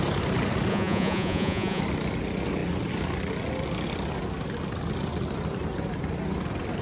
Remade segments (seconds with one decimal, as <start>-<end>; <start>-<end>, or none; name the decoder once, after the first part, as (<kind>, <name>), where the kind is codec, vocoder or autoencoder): 0.7-1.8 (vocoder, Vocos)